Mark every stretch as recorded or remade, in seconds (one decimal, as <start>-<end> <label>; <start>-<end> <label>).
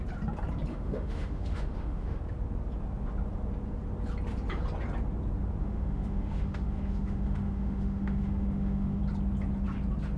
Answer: 0.0-0.7 recorded; 0.7-2.2 remade; 2.2-5.6 recorded; 5.6-9.0 remade; 9.0-10.2 recorded